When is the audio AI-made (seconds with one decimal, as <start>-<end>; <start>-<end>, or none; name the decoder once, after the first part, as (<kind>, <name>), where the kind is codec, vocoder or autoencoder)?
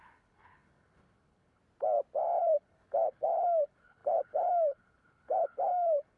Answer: 0.0-1.6 (codec, HILCodec); 2.4-6.2